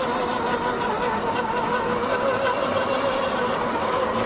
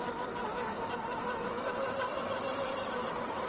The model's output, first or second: second